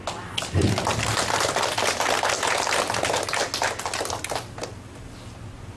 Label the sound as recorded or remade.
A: recorded